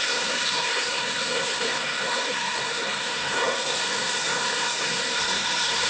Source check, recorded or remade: remade